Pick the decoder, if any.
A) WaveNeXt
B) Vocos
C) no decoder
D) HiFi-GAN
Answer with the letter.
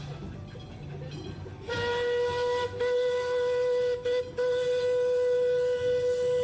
C